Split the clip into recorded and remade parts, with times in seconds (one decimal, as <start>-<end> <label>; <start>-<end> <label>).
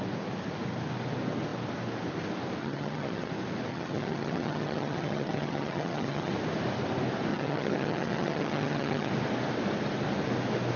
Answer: 0.0-2.6 recorded; 2.6-3.3 remade; 3.3-3.7 recorded; 3.7-6.3 remade; 6.3-7.3 recorded; 7.3-9.1 remade; 9.1-10.8 recorded